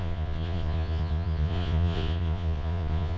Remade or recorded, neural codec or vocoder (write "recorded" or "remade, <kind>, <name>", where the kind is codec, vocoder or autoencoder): remade, vocoder, Vocos